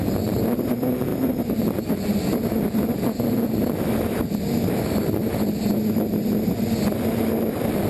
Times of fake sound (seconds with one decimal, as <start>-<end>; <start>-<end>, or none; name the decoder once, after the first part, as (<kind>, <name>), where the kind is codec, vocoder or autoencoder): none